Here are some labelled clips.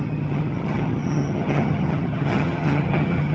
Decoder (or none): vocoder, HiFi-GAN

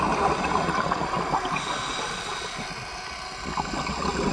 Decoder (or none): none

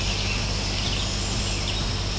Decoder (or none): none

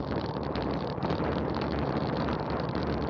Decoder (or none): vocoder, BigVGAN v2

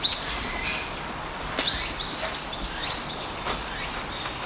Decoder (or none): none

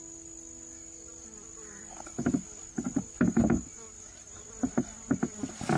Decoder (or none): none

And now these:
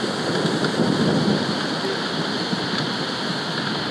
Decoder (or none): none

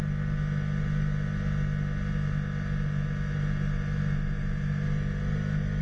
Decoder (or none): none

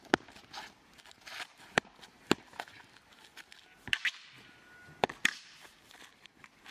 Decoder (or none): none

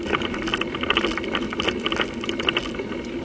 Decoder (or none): none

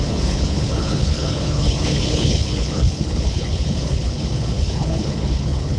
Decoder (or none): codec, HILCodec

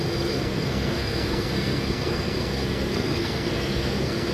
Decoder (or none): codec, SNAC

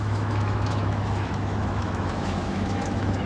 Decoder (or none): autoencoder, DAC-VAE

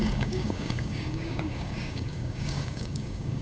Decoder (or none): codec, DAC